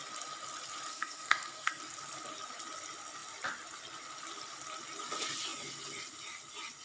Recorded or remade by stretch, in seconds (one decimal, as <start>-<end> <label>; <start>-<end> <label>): 0.0-0.9 recorded; 0.9-1.8 remade; 1.8-6.8 recorded